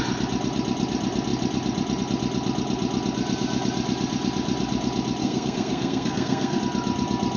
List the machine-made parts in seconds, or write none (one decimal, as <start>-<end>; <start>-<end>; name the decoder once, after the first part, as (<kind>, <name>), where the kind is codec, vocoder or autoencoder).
5.2-6.6 (codec, SNAC)